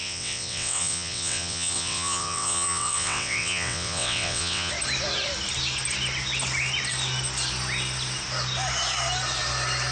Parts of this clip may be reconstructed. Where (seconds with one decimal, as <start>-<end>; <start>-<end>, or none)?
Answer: 0.0-4.7